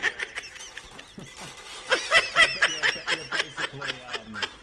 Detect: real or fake real